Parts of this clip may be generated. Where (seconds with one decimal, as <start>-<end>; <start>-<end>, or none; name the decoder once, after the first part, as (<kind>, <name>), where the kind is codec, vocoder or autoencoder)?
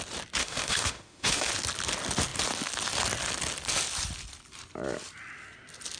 0.4-1.5 (autoencoder, DAC-VAE)